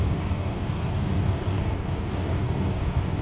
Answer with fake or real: fake